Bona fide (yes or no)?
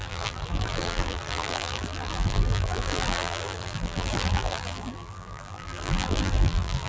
no